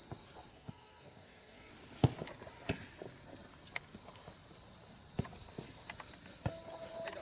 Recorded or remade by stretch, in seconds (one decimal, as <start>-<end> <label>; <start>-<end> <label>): 0.0-0.5 recorded; 0.5-1.7 remade; 1.7-7.2 recorded